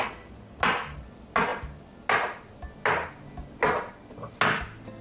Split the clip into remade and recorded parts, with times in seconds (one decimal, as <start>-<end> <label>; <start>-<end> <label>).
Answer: 0.0-5.0 recorded